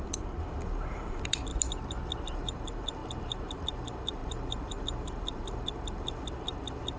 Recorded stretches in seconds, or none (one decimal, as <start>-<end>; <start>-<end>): 1.5-2.2